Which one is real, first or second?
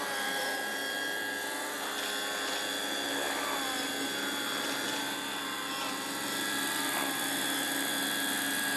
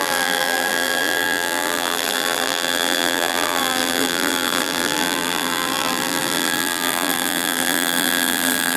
first